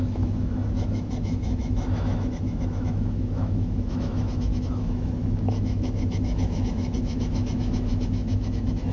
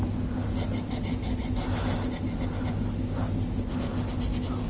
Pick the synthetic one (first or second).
first